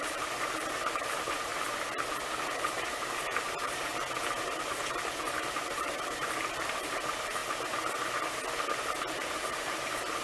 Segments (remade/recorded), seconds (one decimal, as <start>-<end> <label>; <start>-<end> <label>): 0.0-1.5 remade; 1.5-2.3 recorded; 2.3-3.9 remade; 3.9-4.4 recorded; 4.4-7.4 remade; 7.4-10.2 recorded